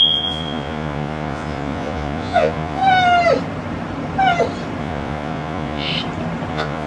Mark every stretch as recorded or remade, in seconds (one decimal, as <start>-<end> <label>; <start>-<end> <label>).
0.0-2.8 remade; 2.8-4.8 recorded; 4.8-5.9 remade; 5.9-6.5 recorded; 6.5-6.9 remade